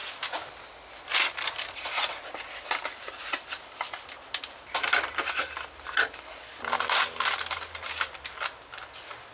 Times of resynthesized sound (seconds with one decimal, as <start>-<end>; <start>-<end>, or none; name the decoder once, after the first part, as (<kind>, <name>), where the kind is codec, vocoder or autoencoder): none